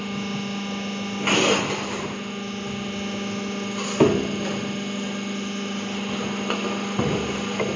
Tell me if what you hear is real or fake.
real